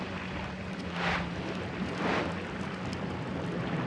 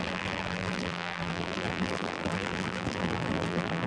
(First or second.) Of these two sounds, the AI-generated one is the second